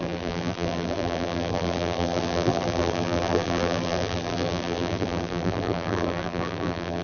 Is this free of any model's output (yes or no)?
no